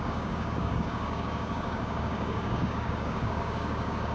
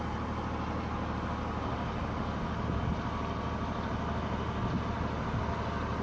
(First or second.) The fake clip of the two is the first